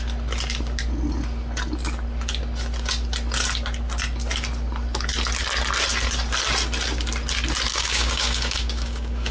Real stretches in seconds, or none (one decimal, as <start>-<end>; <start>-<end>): 0.0-7.7